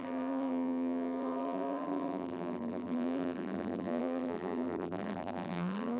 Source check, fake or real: fake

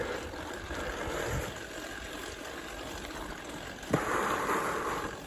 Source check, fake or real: fake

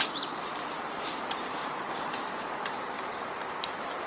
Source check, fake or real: fake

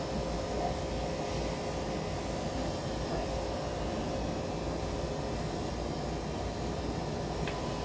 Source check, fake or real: real